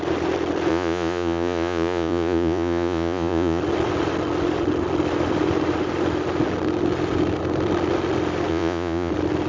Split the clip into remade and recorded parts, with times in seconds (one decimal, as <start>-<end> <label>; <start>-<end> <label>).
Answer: 0.0-0.7 recorded; 0.7-3.6 remade; 3.6-8.5 recorded; 8.5-9.1 remade; 9.1-9.5 recorded